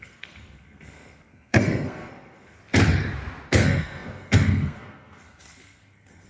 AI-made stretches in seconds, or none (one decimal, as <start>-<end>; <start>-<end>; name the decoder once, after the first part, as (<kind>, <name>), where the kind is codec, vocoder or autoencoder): 0.0-2.6 (codec, SNAC); 3.5-6.3